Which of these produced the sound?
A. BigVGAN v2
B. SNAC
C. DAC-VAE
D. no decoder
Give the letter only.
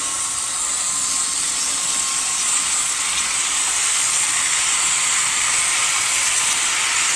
D